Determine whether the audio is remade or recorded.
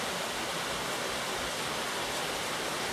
recorded